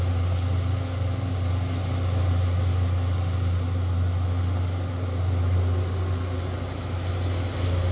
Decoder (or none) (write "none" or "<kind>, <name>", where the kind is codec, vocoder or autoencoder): none